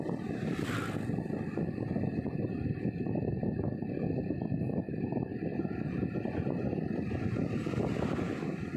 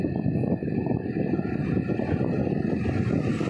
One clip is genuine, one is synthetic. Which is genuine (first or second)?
second